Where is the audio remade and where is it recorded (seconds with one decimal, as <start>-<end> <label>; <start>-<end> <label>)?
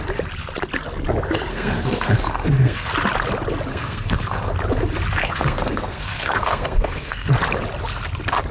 0.0-1.5 recorded; 1.5-2.9 remade; 2.9-3.7 recorded; 3.7-4.5 remade; 4.5-5.2 recorded; 5.2-7.3 remade; 7.3-8.5 recorded